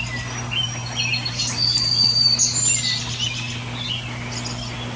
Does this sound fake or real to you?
real